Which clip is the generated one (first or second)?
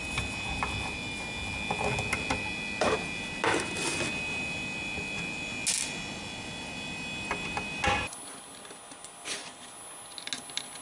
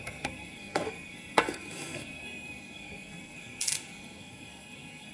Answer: second